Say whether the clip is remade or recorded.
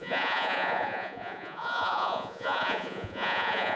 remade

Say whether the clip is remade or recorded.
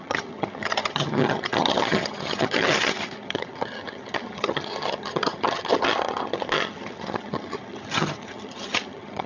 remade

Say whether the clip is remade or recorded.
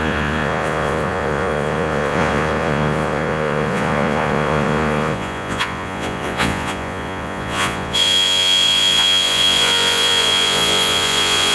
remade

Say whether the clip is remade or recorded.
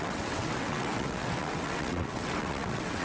remade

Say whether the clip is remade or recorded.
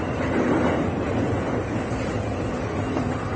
recorded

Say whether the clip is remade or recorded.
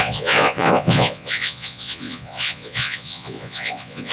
remade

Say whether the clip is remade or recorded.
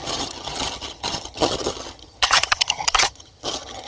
remade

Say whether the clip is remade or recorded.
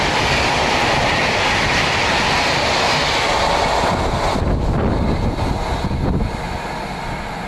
recorded